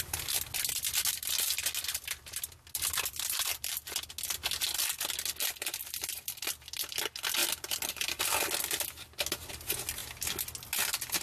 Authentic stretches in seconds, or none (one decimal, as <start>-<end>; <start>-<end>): 0.0-11.2